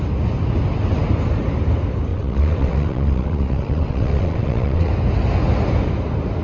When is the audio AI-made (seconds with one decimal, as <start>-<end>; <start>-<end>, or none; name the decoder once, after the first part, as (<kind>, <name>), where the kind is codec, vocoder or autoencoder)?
2.1-4.9 (vocoder, WaveNeXt)